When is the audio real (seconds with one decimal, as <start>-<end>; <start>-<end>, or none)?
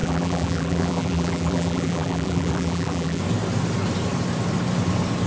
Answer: 3.2-5.3